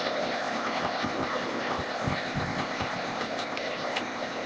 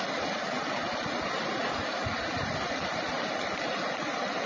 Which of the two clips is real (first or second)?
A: second